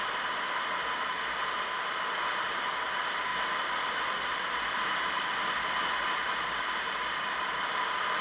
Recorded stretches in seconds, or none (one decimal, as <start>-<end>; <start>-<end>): 0.0-8.2